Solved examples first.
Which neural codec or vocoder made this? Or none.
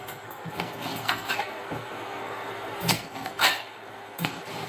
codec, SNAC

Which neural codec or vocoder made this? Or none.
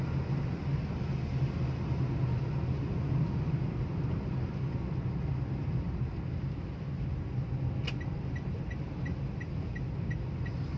none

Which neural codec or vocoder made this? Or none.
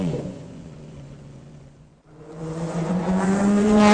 vocoder, Vocos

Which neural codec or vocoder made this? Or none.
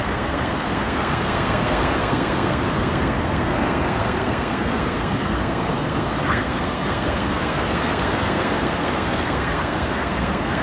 codec, SNAC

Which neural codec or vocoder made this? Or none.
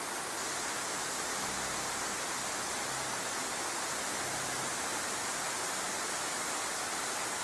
none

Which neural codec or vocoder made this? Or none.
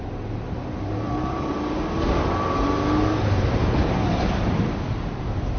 none